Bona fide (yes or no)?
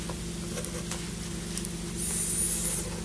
yes